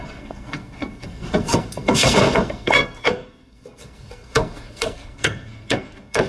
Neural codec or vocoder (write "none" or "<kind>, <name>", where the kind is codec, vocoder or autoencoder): codec, SNAC